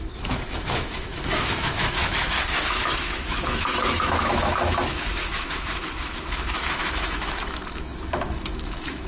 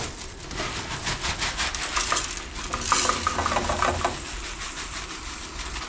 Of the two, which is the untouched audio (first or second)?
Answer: second